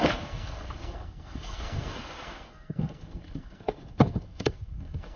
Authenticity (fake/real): fake